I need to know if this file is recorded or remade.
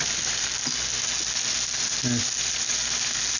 recorded